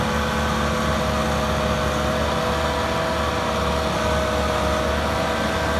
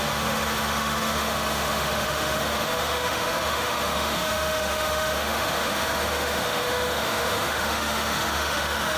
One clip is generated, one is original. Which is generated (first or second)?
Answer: second